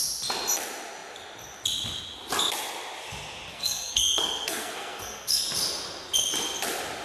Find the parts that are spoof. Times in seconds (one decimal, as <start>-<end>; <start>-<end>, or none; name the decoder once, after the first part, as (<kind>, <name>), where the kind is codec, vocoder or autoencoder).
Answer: 3.5-5.4 (codec, SNAC)